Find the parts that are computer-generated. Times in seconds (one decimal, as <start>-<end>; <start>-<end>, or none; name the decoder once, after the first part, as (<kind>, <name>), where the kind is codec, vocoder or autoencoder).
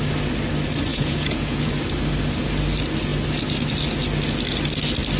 0.9-1.7 (vocoder, Vocos)